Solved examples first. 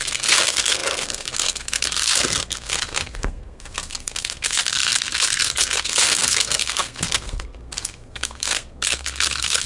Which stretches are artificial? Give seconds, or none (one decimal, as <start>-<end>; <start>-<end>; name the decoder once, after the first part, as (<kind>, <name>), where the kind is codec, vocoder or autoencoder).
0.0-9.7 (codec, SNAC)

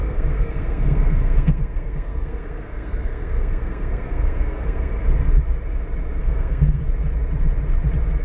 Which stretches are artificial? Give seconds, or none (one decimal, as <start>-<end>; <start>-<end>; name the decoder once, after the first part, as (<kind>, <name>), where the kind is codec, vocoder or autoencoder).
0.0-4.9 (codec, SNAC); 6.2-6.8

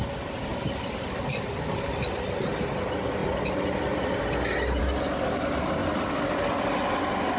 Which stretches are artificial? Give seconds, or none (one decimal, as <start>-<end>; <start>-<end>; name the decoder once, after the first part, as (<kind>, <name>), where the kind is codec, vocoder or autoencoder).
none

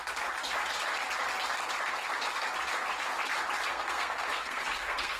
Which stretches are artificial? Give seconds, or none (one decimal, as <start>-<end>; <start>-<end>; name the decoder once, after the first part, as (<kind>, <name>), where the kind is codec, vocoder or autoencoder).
3.7-5.2 (codec, SNAC)

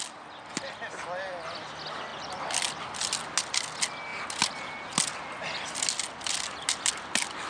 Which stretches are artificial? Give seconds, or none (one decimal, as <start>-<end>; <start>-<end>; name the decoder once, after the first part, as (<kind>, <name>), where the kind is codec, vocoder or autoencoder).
none

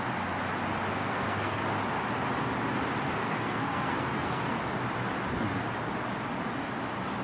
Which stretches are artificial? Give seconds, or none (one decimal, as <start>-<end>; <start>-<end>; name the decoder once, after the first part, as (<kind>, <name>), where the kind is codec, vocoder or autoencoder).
1.0-1.6 (codec, SNAC); 3.2-4.6